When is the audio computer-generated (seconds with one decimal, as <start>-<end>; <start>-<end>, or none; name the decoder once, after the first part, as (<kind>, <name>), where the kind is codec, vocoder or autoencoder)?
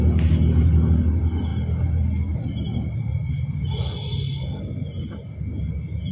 none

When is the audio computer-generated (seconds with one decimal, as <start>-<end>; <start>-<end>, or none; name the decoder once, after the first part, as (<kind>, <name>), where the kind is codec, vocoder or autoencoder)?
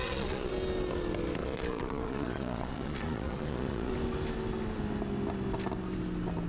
0.0-0.5 (vocoder, Vocos); 1.4-3.9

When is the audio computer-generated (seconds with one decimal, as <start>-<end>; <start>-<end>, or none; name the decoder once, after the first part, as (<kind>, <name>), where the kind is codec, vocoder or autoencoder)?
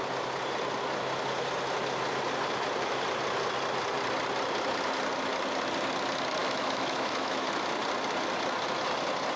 6.4-7.5 (autoencoder, DAC-VAE)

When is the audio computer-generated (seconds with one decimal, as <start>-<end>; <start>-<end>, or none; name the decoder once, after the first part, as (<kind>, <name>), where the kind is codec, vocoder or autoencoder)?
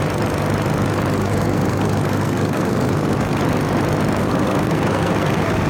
1.2-3.4 (codec, SNAC); 4.2-5.7